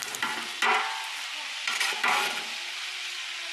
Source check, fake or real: real